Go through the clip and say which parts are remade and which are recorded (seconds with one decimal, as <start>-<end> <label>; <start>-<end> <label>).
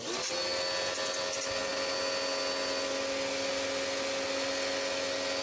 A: 0.0-5.4 recorded